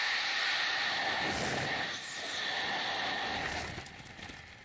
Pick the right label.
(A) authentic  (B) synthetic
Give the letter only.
A